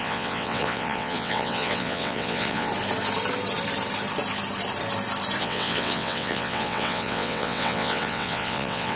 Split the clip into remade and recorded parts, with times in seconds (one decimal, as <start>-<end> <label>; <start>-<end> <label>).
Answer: 0.0-2.7 remade; 2.7-5.4 recorded; 5.4-9.0 remade